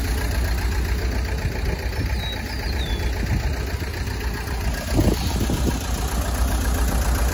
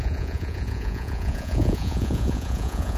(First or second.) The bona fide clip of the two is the first